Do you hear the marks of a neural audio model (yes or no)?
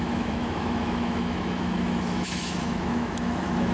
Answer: yes